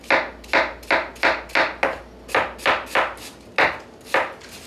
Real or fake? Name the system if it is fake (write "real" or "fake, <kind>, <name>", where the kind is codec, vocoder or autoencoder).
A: real